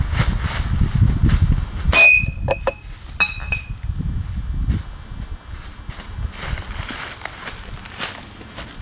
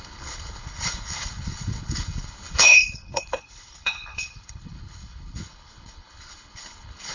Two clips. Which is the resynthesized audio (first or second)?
second